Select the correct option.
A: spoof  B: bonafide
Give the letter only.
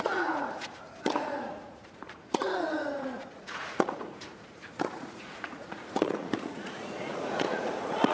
A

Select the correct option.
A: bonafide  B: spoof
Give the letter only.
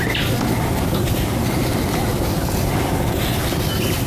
A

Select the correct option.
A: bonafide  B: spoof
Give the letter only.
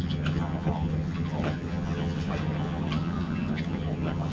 B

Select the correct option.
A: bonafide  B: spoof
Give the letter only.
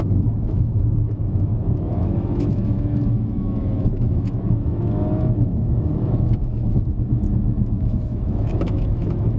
B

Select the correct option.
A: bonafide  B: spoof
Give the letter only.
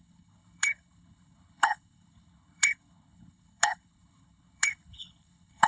B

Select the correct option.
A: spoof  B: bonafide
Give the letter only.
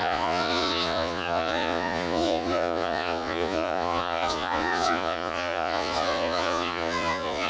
A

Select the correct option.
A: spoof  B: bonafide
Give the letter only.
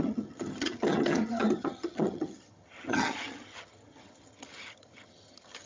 A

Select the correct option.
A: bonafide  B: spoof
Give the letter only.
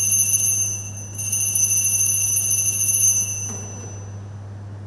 A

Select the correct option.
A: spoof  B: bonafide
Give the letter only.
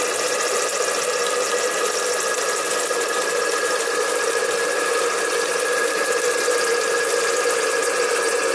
B